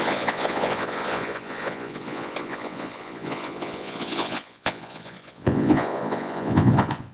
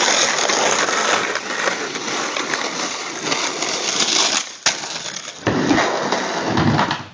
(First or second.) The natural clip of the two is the second